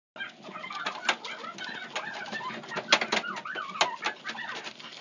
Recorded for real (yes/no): yes